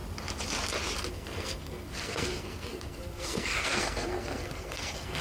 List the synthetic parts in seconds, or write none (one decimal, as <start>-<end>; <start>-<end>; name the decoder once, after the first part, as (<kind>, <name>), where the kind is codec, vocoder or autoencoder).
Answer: 1.1-5.2 (codec, SNAC)